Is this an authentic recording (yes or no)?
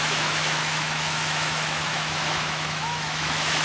no